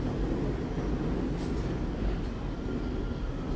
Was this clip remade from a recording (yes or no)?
no